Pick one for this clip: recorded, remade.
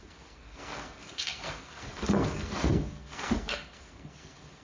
remade